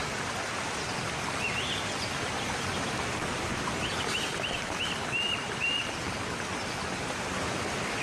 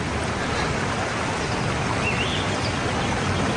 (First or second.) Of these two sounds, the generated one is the first